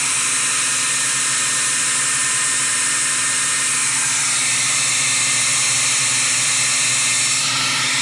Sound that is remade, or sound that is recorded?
recorded